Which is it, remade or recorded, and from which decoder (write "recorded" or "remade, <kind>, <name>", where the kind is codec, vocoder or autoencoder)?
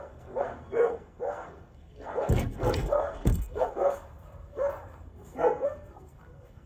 remade, codec, SNAC